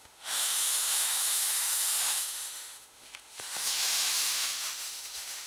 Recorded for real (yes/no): no